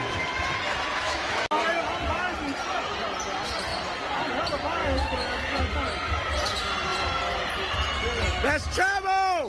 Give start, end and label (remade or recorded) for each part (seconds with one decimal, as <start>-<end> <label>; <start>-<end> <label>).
0.0-0.9 recorded; 0.9-1.6 remade; 1.6-4.8 recorded; 4.8-5.6 remade; 5.6-9.5 recorded